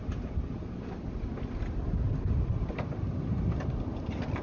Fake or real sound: real